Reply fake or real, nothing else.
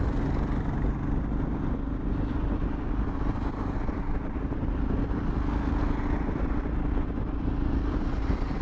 real